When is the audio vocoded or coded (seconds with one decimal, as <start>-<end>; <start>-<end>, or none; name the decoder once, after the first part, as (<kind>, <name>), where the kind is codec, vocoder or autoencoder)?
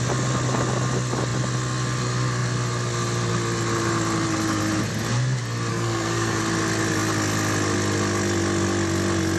5.7-6.4 (codec, SNAC)